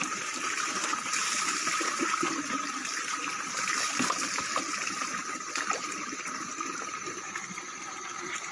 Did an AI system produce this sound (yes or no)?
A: yes